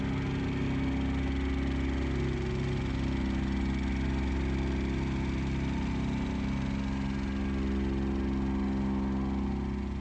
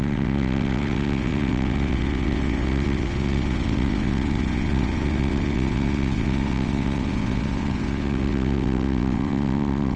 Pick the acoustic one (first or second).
first